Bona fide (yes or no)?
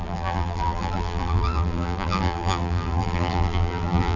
no